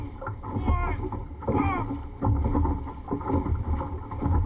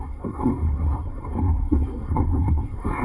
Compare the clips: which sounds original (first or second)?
first